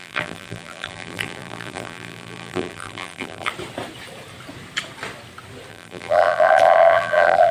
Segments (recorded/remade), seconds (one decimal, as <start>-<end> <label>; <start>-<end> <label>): 0.0-3.5 remade; 3.5-5.7 recorded; 5.7-7.5 remade